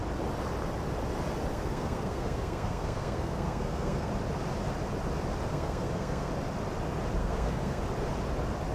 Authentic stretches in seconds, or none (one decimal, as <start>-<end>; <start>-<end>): 0.0-1.5; 4.1-5.5; 6.3-7.2; 7.8-8.7